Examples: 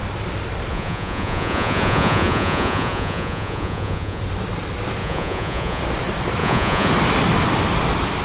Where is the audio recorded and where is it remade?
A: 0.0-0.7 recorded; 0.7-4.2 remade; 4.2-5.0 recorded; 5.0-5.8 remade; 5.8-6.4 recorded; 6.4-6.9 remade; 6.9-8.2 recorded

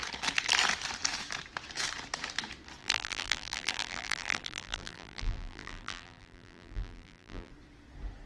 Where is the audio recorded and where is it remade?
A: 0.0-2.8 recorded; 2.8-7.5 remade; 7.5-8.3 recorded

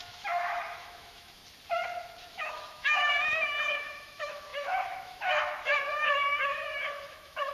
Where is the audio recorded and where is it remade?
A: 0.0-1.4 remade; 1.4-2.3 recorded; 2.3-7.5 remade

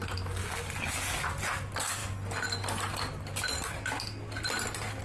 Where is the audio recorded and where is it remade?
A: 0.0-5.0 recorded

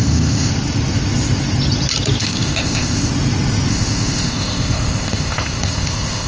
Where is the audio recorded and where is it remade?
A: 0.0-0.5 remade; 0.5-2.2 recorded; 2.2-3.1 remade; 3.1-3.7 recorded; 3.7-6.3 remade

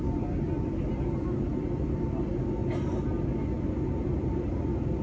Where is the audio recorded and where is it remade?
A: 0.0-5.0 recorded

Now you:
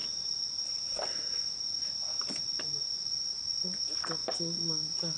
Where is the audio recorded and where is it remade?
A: 0.0-5.2 recorded